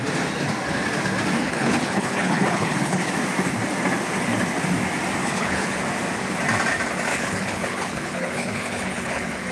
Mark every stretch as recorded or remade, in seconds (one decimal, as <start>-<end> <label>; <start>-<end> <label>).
0.0-1.4 recorded; 1.4-3.1 remade; 3.1-5.2 recorded; 5.2-5.8 remade; 5.8-7.1 recorded; 7.1-9.5 remade